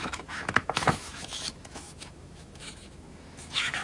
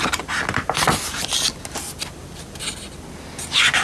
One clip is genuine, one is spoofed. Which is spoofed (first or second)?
first